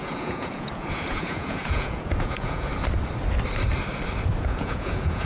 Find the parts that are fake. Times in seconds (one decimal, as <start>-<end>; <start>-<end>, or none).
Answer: 0.0-2.7; 4.4-5.2